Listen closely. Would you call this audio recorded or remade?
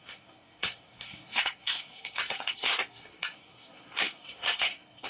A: remade